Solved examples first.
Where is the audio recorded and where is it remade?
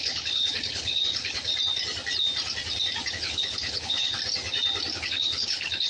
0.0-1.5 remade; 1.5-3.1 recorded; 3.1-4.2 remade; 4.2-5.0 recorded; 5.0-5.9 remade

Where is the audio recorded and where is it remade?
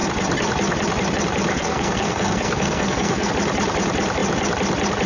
0.0-1.5 recorded; 1.5-3.3 remade; 3.3-5.1 recorded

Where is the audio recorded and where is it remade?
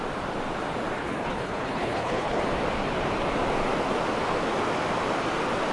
0.0-1.0 recorded; 1.0-2.4 remade; 2.4-5.7 recorded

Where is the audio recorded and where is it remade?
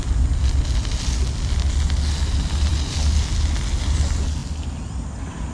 0.0-5.5 recorded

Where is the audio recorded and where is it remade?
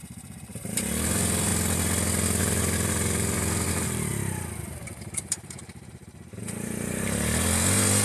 0.0-1.5 remade; 1.5-2.4 recorded; 2.4-4.1 remade; 4.1-4.7 recorded; 4.7-8.0 remade